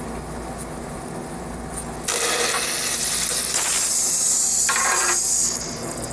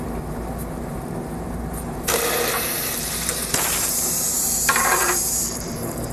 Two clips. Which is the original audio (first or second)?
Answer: first